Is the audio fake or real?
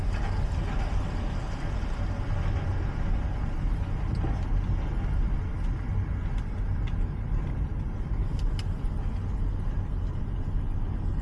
real